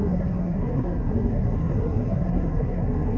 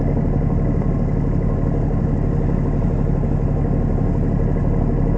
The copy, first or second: first